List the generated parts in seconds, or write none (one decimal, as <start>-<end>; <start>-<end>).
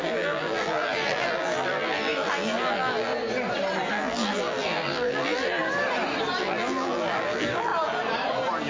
0.0-3.1; 3.9-5.6; 6.4-7.7